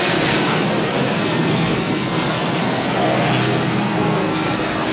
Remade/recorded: remade